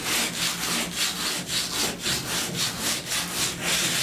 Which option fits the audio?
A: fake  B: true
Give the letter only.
B